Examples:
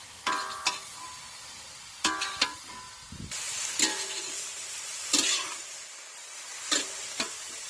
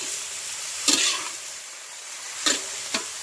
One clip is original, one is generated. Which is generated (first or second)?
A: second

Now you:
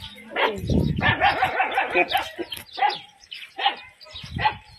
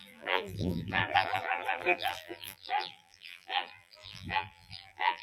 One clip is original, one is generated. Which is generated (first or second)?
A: second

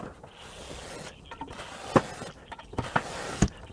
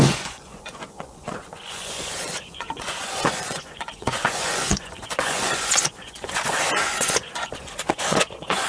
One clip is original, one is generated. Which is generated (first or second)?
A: second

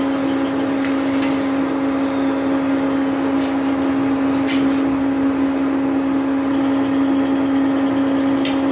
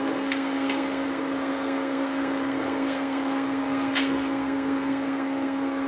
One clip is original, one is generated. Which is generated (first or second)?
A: second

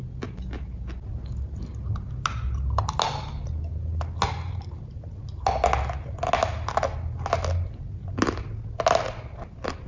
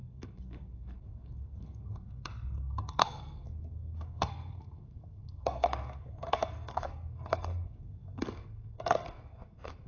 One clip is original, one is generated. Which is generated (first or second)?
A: second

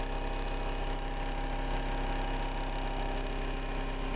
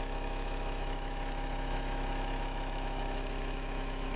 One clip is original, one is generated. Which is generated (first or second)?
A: second